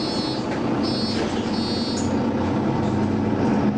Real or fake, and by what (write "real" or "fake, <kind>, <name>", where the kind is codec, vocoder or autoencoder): real